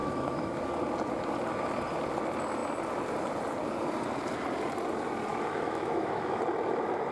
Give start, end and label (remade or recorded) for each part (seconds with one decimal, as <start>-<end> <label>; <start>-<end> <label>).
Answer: 0.0-0.6 remade; 0.6-5.3 recorded; 5.3-6.4 remade; 6.4-7.1 recorded